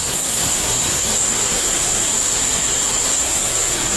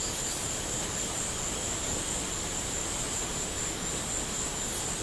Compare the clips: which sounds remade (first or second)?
first